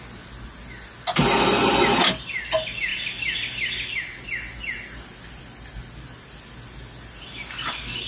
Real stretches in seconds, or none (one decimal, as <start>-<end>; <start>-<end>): 0.0-8.1